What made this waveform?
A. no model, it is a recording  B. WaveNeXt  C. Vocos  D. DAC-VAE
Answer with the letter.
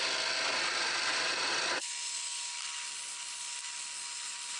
A